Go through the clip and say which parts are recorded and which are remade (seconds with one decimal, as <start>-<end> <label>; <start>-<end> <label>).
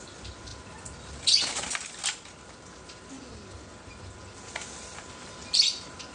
0.0-6.1 recorded